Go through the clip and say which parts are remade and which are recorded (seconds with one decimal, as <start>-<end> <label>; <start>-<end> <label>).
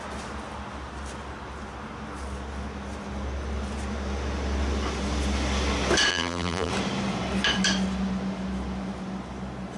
0.0-6.1 recorded; 6.1-6.7 remade; 6.7-9.8 recorded